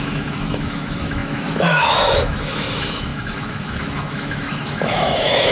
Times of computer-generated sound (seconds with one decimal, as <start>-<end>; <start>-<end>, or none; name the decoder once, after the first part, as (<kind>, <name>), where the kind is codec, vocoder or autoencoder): 0.0-5.5 (autoencoder, DAC-VAE)